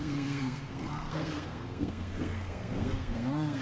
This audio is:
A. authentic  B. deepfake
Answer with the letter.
B